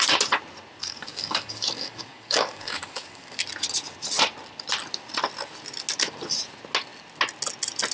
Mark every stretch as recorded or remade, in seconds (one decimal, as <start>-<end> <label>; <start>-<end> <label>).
0.0-0.8 recorded; 0.8-3.4 remade; 3.4-7.9 recorded